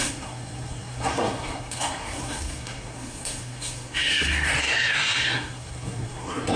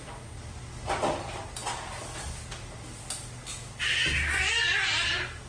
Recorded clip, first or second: second